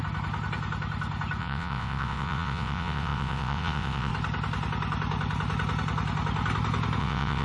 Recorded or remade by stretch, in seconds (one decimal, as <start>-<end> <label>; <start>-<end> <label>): 0.0-1.4 recorded; 1.4-4.1 remade; 4.1-7.0 recorded; 7.0-7.4 remade